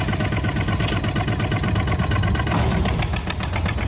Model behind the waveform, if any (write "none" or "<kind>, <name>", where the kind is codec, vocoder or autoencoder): none